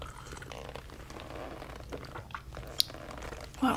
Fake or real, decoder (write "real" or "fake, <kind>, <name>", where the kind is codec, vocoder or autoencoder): real